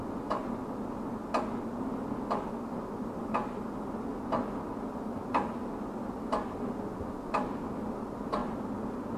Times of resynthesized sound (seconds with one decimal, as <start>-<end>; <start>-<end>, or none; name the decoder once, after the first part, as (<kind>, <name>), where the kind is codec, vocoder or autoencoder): none